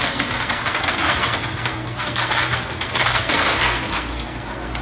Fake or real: fake